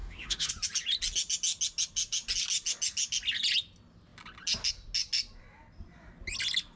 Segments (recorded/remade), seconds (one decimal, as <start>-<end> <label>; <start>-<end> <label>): 0.0-0.5 remade; 0.5-6.8 recorded